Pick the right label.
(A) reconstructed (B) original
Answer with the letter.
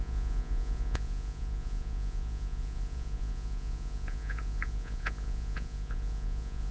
A